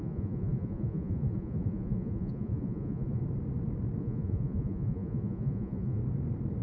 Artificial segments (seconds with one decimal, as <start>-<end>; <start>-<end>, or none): 0.0-3.2; 4.0-6.0

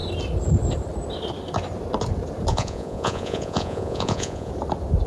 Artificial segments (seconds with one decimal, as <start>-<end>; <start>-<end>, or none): 2.5-4.5